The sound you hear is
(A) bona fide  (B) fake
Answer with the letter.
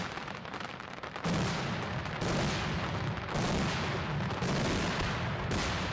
A